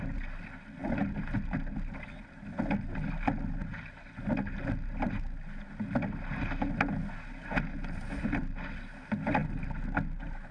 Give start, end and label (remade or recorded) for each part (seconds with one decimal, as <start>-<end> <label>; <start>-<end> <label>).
0.0-10.5 recorded